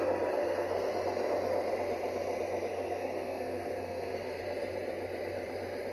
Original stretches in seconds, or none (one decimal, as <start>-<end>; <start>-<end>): 0.0-0.4; 0.9-2.7; 4.4-5.9